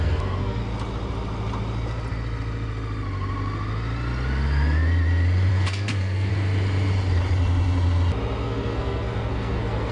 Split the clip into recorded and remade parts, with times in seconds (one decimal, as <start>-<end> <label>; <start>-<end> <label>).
0.0-0.6 remade; 0.6-5.5 recorded; 5.5-6.3 remade; 6.3-8.4 recorded; 8.4-9.9 remade